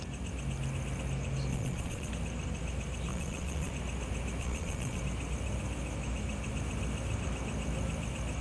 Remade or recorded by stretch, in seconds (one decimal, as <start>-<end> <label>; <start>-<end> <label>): 0.0-1.5 recorded; 1.5-2.1 remade; 2.1-3.1 recorded; 3.1-3.7 remade; 3.7-4.4 recorded; 4.4-5.0 remade; 5.0-8.4 recorded